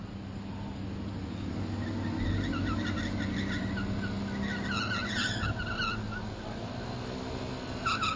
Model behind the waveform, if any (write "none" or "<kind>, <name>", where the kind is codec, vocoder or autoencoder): none